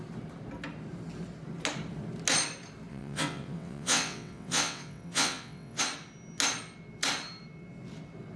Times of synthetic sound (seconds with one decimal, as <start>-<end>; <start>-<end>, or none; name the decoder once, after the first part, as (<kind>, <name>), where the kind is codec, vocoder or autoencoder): 2.9-5.8 (vocoder, WaveNeXt)